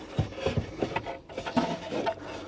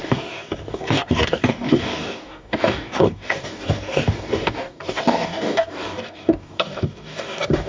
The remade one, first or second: second